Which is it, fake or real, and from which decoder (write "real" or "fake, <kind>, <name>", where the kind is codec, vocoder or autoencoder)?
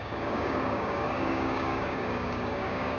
fake, codec, DAC